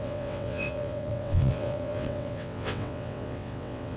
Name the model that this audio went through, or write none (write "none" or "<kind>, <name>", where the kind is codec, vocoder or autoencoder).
vocoder, WaveNeXt